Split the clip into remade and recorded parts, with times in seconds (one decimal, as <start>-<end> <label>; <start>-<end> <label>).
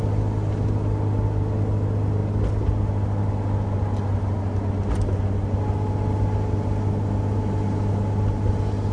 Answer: 0.0-8.9 recorded